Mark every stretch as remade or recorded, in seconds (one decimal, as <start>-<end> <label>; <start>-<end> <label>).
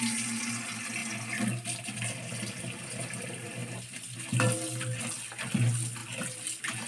0.0-6.9 recorded